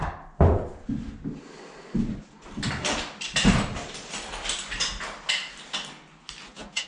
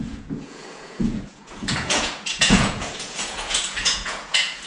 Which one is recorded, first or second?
first